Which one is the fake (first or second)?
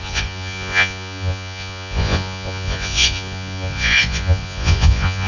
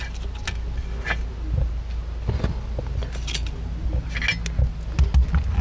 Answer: first